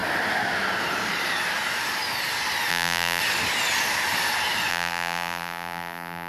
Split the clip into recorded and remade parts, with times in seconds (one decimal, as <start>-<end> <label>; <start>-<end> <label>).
0.0-2.7 recorded; 2.7-3.2 remade; 3.2-4.7 recorded; 4.7-6.3 remade

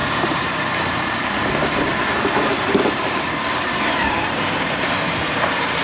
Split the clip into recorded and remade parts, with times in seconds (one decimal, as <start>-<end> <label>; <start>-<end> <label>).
0.0-1.5 remade; 1.5-2.5 recorded; 2.5-5.8 remade

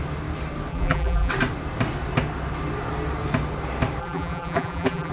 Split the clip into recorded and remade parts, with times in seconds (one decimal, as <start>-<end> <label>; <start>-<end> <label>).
0.0-0.7 recorded; 0.7-1.3 remade; 1.3-4.0 recorded; 4.0-5.1 remade

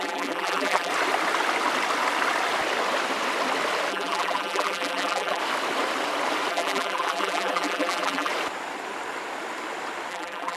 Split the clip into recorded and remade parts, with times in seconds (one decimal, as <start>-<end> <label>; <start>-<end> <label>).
0.0-0.9 remade; 0.9-3.9 recorded; 3.9-5.4 remade; 5.4-6.5 recorded; 6.5-8.3 remade; 8.3-10.1 recorded; 10.1-10.6 remade

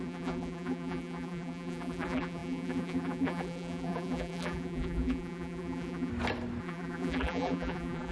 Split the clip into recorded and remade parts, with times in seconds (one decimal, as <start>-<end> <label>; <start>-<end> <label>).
0.0-6.1 remade; 6.1-6.6 recorded; 6.6-8.1 remade

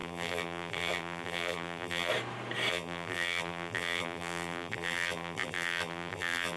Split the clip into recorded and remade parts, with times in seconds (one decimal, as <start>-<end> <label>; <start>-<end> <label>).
0.0-2.1 remade; 2.1-2.7 recorded; 2.7-6.6 remade

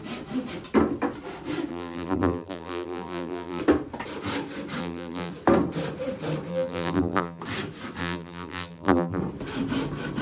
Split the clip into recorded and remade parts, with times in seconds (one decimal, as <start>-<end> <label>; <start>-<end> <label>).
0.0-1.7 recorded; 1.7-3.6 remade; 3.6-4.8 recorded; 4.8-5.3 remade; 5.3-6.5 recorded; 6.5-7.4 remade; 7.4-8.0 recorded; 8.0-9.2 remade; 9.2-10.2 recorded

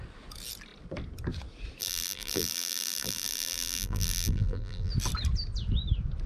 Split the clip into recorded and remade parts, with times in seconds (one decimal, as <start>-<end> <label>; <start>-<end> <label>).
0.0-1.8 recorded; 1.8-4.9 remade; 4.9-6.3 recorded